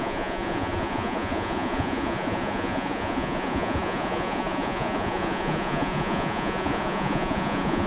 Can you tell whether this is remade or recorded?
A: remade